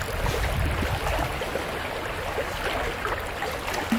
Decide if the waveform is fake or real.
real